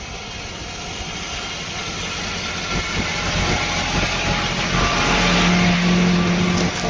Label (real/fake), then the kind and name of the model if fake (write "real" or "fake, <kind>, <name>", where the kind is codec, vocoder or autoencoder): real